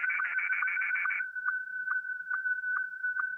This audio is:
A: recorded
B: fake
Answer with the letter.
B